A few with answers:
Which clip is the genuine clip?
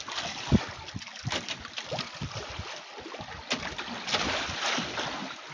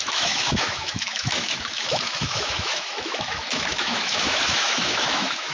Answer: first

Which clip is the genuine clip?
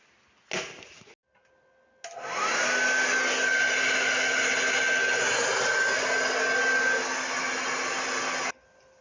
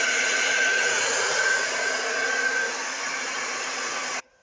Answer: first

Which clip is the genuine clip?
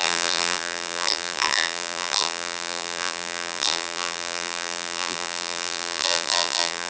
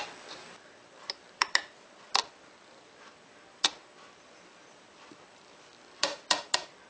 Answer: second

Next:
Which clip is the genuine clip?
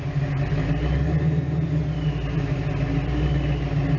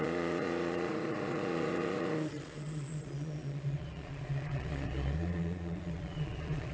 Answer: first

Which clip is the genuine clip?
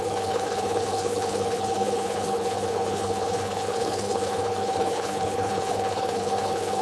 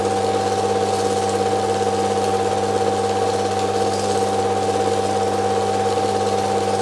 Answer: second